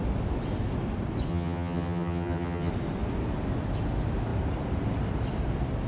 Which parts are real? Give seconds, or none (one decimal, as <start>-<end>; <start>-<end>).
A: 0.0-1.3; 2.7-5.9